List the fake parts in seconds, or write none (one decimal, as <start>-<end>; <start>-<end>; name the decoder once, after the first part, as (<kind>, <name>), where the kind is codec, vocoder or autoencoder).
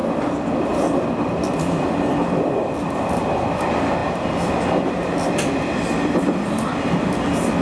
none